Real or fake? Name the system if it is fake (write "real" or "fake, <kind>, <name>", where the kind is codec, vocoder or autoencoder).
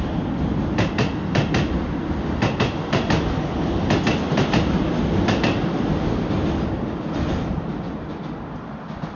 real